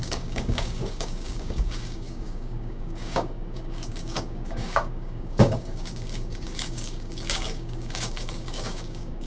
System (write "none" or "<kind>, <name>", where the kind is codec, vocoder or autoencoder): codec, DAC